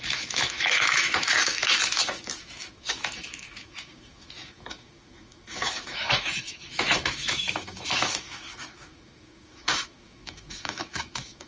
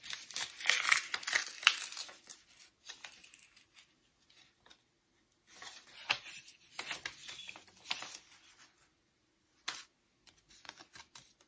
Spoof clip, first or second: first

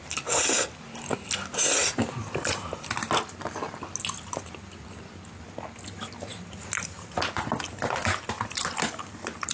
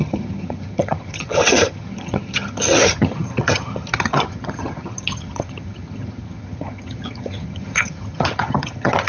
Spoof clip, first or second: second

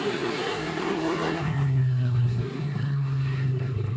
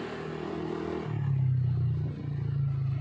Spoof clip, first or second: first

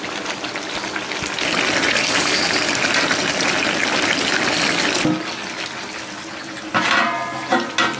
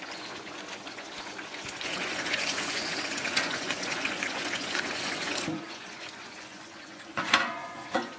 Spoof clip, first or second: second